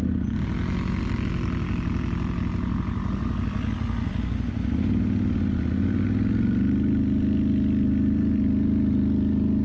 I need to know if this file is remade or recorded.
recorded